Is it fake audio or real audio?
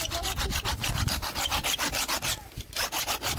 real